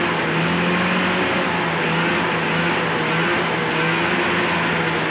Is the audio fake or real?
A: real